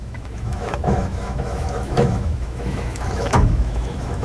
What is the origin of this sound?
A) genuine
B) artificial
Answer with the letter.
B